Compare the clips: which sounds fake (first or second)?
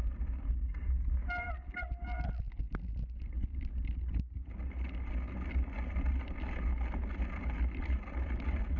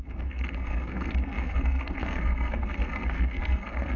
second